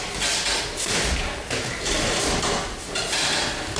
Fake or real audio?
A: real